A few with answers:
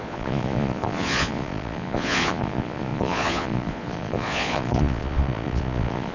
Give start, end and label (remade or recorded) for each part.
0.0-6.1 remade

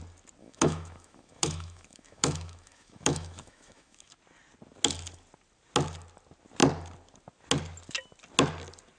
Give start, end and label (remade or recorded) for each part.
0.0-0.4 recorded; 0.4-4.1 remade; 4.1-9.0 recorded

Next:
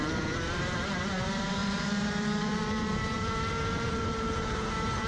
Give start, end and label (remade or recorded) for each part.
0.0-5.1 remade

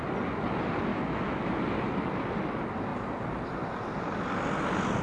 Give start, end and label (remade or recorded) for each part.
0.0-0.9 recorded; 0.9-1.6 remade; 1.6-5.0 recorded

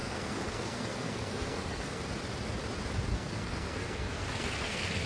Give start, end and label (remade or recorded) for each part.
0.0-2.0 remade; 2.0-3.1 recorded; 3.1-5.1 remade